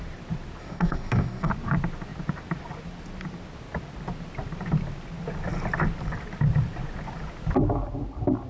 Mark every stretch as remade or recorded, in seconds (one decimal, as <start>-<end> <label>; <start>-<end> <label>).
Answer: 0.0-0.6 recorded; 0.6-1.5 remade; 1.5-8.5 recorded